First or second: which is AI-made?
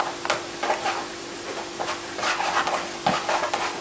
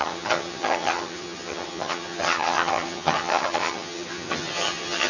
second